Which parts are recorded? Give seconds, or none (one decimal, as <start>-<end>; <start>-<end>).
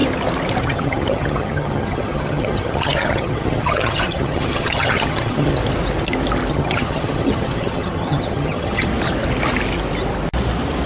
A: 0.0-0.6; 5.6-6.5; 8.9-10.9